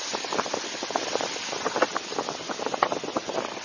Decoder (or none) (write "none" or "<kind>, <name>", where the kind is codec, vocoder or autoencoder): none